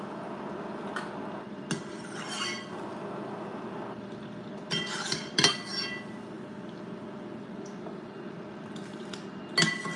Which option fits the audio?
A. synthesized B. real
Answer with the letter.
B